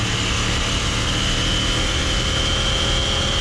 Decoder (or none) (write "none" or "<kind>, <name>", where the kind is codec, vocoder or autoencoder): none